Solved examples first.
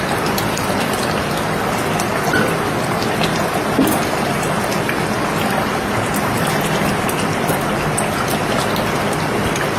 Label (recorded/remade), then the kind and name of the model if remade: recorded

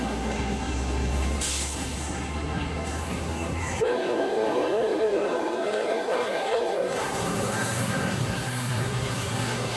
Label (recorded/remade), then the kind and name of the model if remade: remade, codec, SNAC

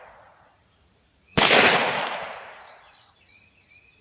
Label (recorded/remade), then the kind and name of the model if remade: remade, vocoder, Vocos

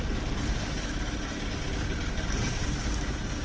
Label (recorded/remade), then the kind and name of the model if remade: recorded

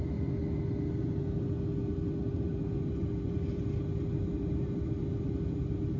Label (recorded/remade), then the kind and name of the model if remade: recorded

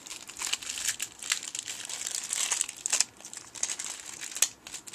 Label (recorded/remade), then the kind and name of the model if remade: recorded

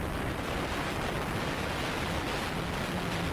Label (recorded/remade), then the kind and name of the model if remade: recorded